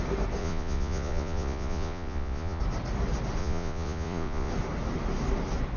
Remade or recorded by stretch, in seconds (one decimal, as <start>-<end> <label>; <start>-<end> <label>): 0.0-0.4 recorded; 0.4-2.6 remade; 2.6-3.4 recorded; 3.4-4.5 remade; 4.5-5.8 recorded